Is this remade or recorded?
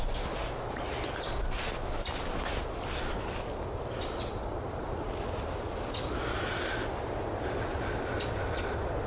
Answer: recorded